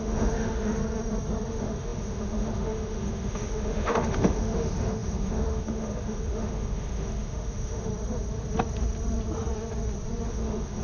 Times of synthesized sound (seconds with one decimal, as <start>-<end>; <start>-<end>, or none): 0.0-0.8; 1.5-7.9; 10.3-10.8